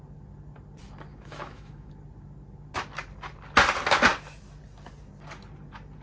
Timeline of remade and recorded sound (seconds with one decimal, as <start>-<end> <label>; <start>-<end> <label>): 0.0-1.1 recorded; 1.1-1.9 remade; 1.9-6.0 recorded

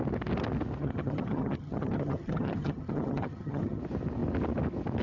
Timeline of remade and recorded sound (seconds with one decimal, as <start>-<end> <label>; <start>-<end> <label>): 0.0-0.8 recorded; 0.8-3.8 remade; 3.8-5.0 recorded

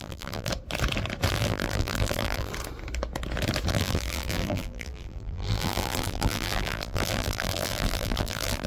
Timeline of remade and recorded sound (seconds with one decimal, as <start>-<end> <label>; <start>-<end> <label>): 0.0-0.5 remade; 0.5-1.3 recorded; 1.3-2.5 remade; 2.5-3.7 recorded; 3.7-8.7 remade